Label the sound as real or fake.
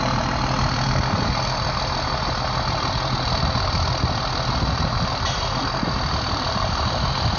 real